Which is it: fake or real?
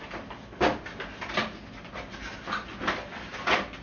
real